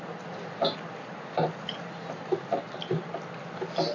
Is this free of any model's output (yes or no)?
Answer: yes